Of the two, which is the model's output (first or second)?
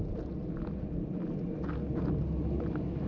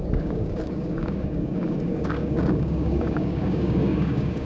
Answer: second